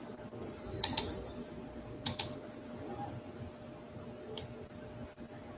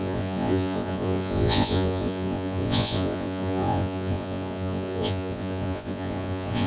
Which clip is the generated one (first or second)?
second